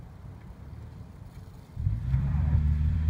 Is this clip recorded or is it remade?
remade